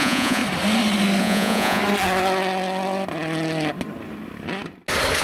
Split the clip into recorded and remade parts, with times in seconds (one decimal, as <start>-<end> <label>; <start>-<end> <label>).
0.0-0.4 remade; 0.4-1.2 recorded; 1.2-1.8 remade; 1.8-5.2 recorded